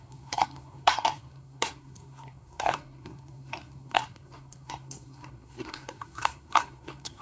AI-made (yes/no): yes